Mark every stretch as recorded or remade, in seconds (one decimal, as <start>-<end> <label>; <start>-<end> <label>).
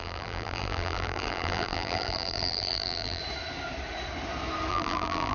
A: 0.0-3.2 remade; 3.2-4.7 recorded; 4.7-5.3 remade